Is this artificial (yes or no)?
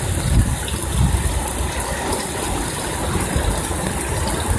no